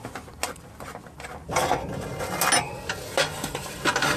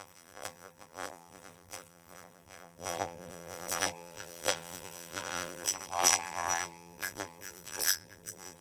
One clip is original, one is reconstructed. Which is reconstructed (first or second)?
second